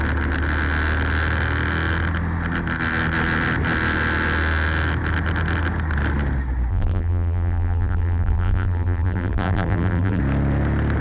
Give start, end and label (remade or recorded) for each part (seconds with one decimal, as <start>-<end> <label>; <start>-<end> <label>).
0.0-6.7 recorded; 6.7-10.2 remade; 10.2-11.0 recorded